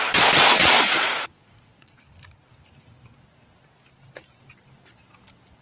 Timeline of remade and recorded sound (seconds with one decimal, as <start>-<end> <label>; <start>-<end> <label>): 0.0-0.6 recorded; 0.6-2.0 remade; 2.0-5.6 recorded